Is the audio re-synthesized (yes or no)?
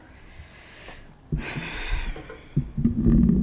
no